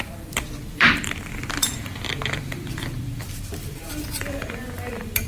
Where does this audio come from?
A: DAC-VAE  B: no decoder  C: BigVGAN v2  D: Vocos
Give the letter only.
C